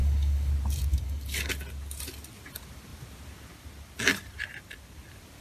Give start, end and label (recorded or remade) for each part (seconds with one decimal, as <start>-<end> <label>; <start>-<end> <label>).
0.0-0.5 remade; 0.5-0.9 recorded; 0.9-1.5 remade; 1.5-5.4 recorded